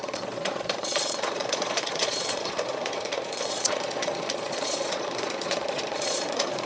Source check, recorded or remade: remade